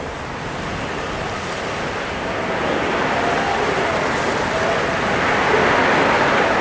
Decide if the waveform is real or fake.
real